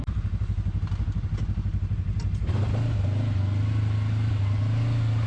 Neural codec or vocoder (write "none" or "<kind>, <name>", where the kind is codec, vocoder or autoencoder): none